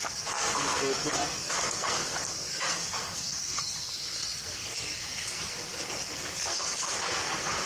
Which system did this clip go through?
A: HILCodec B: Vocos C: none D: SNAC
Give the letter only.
D